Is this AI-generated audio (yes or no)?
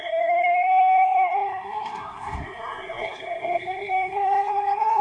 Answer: yes